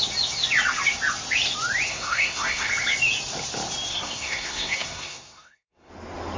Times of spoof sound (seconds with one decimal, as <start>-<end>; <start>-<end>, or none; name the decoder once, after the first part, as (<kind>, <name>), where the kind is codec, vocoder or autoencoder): 1.9-2.7 (codec, SNAC); 3.9-5.9